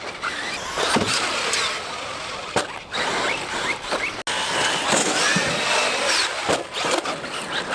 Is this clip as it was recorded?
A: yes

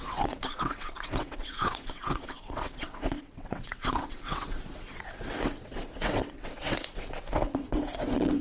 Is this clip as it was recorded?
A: no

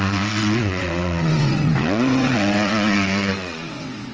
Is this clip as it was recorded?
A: no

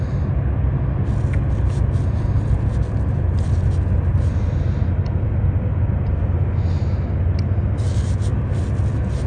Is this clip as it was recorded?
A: yes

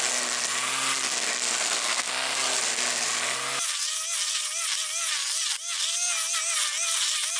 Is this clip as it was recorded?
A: yes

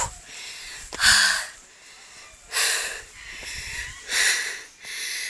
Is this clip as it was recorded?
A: yes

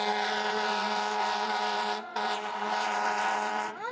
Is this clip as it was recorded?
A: no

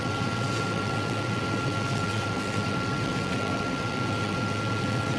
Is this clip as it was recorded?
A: no